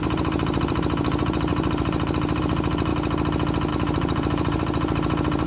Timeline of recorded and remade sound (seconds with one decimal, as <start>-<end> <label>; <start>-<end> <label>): 0.0-2.9 remade; 2.9-3.7 recorded; 3.7-5.5 remade